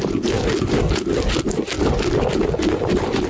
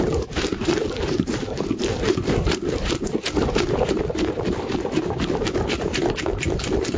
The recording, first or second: first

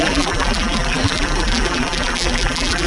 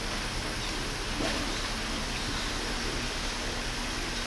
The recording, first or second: second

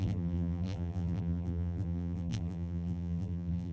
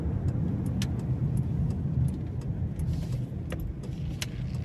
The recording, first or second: second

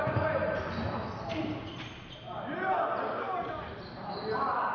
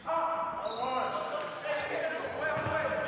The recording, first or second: second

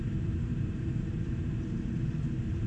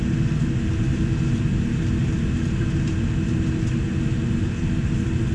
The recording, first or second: second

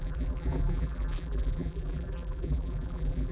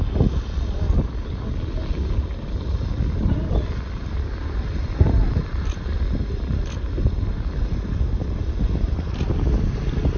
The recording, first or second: second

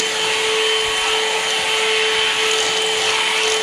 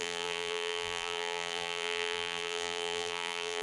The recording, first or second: first